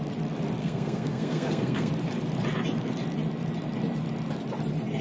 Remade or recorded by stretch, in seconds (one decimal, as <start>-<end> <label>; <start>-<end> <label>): 0.0-0.6 recorded; 0.6-1.9 remade; 1.9-5.0 recorded